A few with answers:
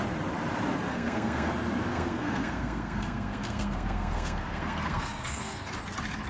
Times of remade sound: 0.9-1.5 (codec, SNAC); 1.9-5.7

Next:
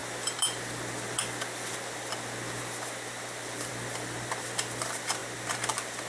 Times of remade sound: none

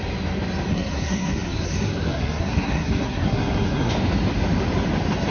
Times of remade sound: 0.7-3.9 (codec, SNAC)